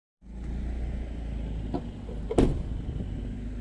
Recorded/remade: recorded